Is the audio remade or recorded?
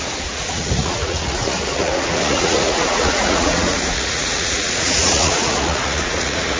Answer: remade